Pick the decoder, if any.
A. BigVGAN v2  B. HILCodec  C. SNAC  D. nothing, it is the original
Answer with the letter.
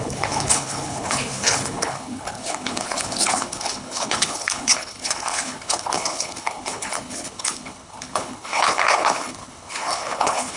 B